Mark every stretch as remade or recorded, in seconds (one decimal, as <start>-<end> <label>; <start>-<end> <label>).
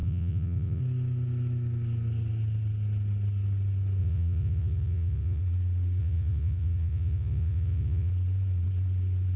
0.0-0.8 remade; 0.8-4.0 recorded; 4.0-5.4 remade; 5.4-6.0 recorded; 6.0-8.1 remade; 8.1-9.4 recorded